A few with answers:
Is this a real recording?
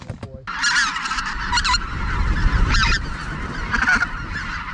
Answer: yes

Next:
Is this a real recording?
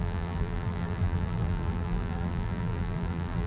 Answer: no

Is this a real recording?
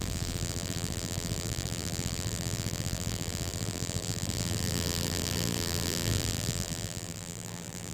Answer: no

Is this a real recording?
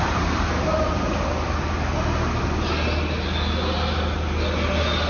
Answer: yes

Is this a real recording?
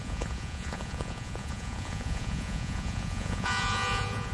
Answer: no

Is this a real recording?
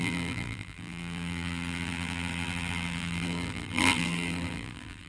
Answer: no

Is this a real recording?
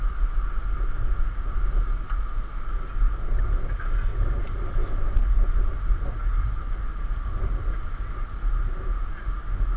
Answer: yes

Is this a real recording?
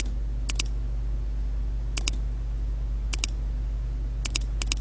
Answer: yes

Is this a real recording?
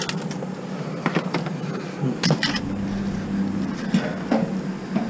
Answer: yes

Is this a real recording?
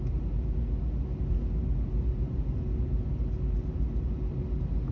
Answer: yes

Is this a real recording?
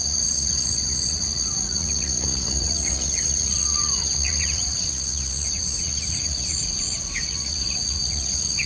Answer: no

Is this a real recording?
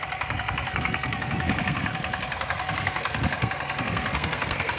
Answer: no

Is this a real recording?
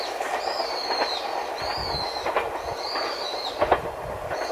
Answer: yes